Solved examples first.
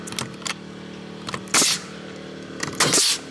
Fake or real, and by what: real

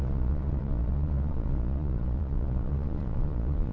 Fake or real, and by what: fake, vocoder, Vocos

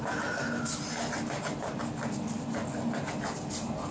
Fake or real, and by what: real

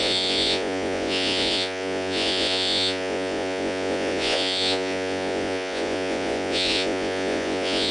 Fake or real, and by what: fake, vocoder, Vocos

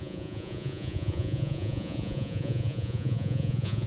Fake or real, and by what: fake, vocoder, Vocos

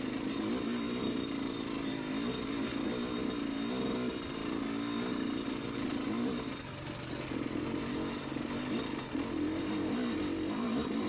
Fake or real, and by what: real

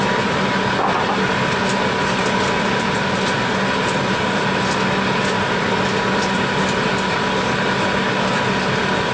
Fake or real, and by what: real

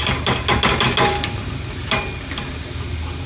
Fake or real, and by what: real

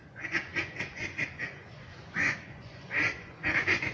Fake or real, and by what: fake, vocoder, Vocos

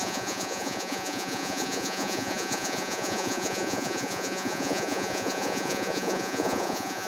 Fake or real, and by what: fake, vocoder, Vocos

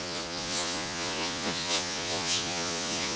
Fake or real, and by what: fake, vocoder, Vocos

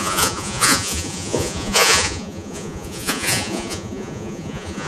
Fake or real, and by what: fake, vocoder, Vocos